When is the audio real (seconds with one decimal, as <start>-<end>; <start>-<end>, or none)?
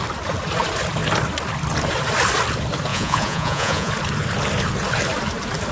0.0-2.9; 3.9-5.7